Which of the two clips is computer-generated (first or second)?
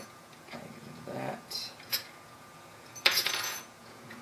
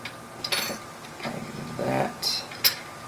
first